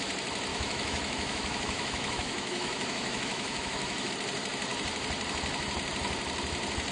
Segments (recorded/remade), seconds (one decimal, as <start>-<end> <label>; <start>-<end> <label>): 0.0-0.5 recorded; 0.5-4.1 remade; 4.1-6.9 recorded